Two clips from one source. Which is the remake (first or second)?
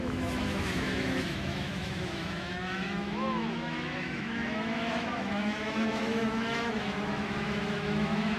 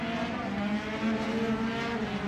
first